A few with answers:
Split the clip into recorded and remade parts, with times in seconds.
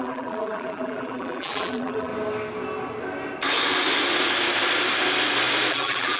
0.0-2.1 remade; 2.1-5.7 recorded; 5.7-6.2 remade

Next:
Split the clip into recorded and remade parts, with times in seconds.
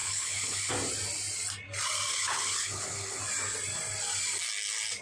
0.0-0.7 remade; 0.7-2.1 recorded; 2.1-3.2 remade; 3.2-5.0 recorded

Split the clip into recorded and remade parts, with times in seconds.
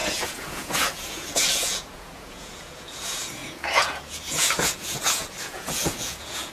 0.0-6.5 remade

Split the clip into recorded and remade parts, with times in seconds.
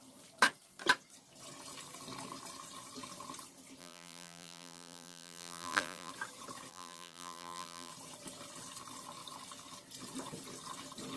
0.0-3.8 recorded; 3.8-6.1 remade; 6.1-6.7 recorded; 6.7-7.9 remade; 7.9-11.2 recorded